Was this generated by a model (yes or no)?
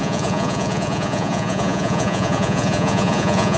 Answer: yes